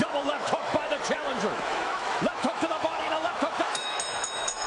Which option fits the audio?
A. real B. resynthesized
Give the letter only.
B